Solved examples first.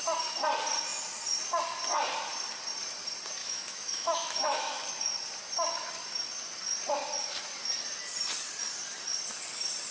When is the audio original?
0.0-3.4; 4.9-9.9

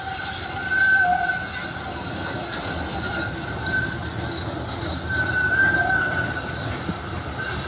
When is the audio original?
0.0-7.7

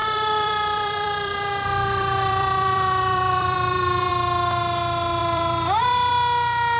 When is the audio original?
4.1-5.2; 6.1-6.8

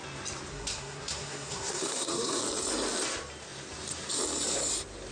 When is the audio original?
0.0-0.5; 2.4-5.1

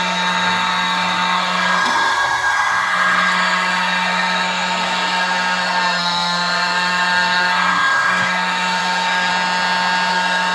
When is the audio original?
9.3-10.1

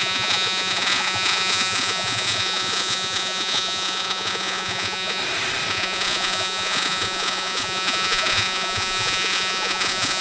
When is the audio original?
5.2-5.7

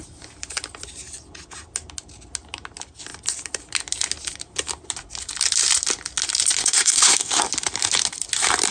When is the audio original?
0.0-6.6; 7.4-8.7